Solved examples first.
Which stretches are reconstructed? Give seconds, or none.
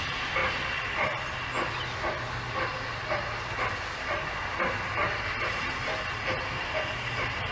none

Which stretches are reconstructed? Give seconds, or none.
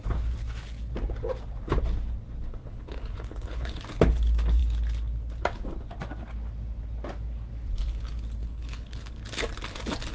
2.6-3.8 (codec, HILCodec); 8.4-9.2